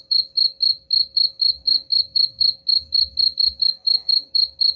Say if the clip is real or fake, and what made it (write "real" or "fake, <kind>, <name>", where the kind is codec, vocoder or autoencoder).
real